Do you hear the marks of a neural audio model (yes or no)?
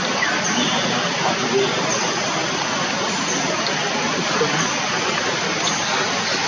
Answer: no